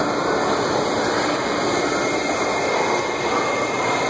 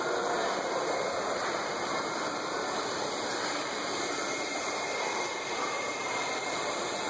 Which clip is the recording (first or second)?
first